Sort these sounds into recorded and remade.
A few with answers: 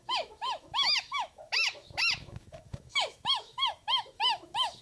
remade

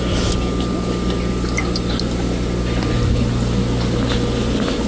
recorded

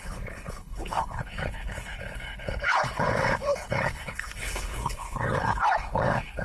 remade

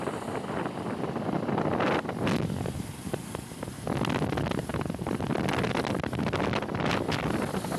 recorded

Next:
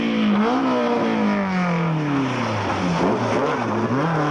recorded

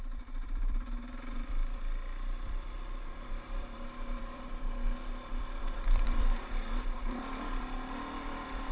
remade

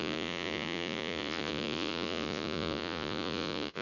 remade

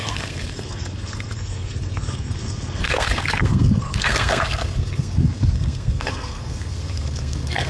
remade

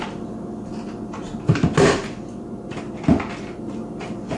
recorded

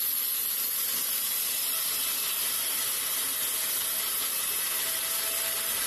recorded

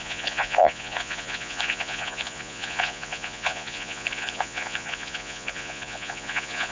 remade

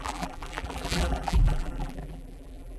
remade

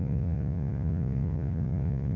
remade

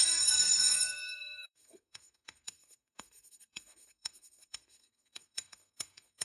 remade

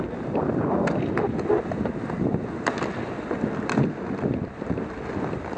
recorded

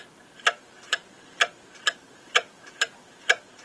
recorded